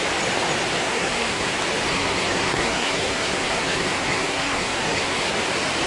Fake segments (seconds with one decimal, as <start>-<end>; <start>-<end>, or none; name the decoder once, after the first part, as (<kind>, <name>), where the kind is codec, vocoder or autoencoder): 0.8-1.5 (codec, SNAC); 1.9-5.4